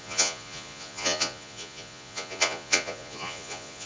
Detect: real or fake fake